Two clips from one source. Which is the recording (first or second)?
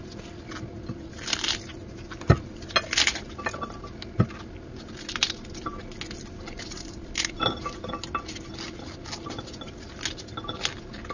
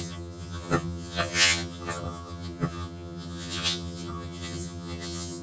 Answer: first